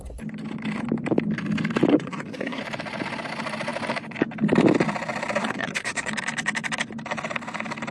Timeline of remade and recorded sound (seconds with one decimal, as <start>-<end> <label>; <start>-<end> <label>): 0.0-1.9 recorded; 1.9-2.6 remade; 2.6-5.4 recorded; 5.4-6.1 remade; 6.1-7.9 recorded